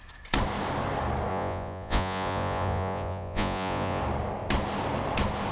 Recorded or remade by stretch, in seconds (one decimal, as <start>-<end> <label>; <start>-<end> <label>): 0.0-1.3 recorded; 1.3-4.0 remade; 4.0-5.5 recorded